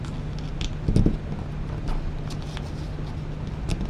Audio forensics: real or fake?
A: real